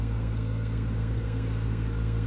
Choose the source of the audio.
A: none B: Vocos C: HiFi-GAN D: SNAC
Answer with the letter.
D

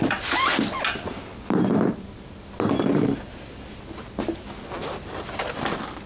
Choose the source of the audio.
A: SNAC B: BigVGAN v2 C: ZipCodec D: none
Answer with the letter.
D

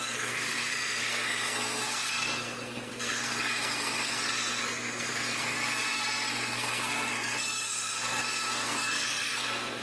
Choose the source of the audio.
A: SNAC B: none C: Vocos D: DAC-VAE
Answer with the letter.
A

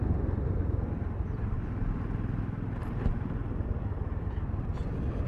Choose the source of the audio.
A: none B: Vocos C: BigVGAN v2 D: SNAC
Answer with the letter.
A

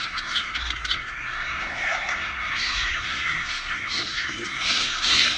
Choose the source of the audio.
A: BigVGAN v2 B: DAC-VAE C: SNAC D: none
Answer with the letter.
C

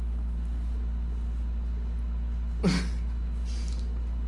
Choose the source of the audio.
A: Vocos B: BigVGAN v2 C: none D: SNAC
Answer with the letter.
C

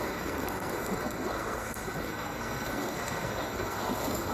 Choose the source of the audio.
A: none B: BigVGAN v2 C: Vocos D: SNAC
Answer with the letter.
D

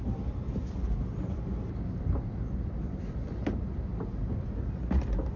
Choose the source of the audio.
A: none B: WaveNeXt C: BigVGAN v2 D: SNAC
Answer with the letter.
A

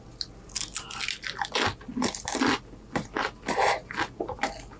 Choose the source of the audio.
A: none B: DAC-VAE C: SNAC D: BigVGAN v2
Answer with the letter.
A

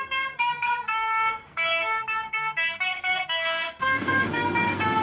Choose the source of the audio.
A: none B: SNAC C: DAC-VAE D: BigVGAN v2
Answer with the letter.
B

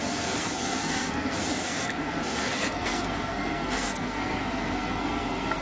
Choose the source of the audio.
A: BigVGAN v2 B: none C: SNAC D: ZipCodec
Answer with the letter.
C